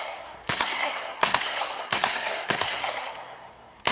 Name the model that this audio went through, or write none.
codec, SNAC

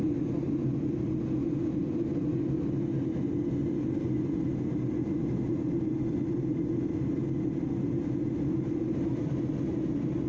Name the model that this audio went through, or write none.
none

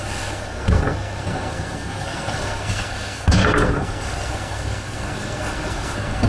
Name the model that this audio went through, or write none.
codec, SNAC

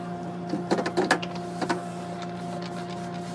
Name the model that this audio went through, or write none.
none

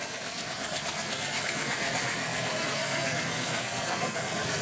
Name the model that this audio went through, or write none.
codec, SNAC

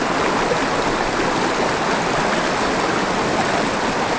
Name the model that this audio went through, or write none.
none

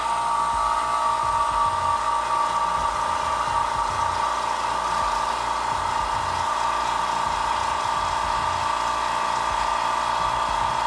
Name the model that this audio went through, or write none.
none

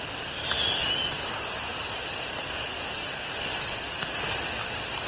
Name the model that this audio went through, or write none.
none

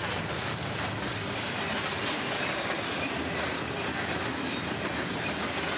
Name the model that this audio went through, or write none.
none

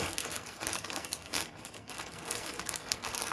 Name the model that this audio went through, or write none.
codec, SNAC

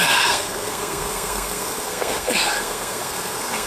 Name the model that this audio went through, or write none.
codec, SNAC